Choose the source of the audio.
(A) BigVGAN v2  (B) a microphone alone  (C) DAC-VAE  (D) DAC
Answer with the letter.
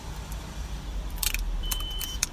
A